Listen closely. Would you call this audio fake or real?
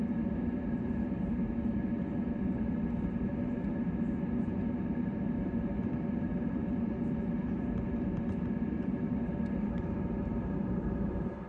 fake